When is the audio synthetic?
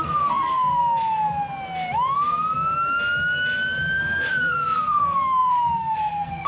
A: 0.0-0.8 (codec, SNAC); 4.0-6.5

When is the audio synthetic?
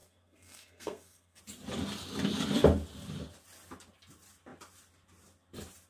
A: 0.0-1.4 (codec, SNAC)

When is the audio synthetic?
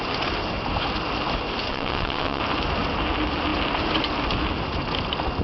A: 1.7-2.4 (vocoder, WaveNeXt)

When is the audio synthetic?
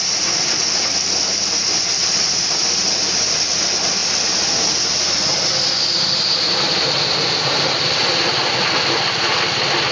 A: none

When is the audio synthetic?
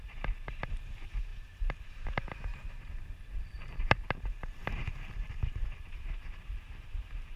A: 0.0-7.4 (vocoder, BigVGAN v2)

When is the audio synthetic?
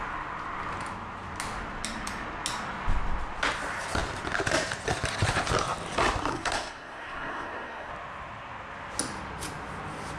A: 6.3-7.9 (codec, SNAC)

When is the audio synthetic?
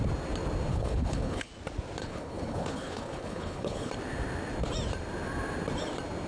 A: 0.7-1.5 (codec, HILCodec); 2.0-3.9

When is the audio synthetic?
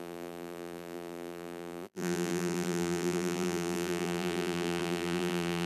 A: 0.0-5.7 (vocoder, BigVGAN v2)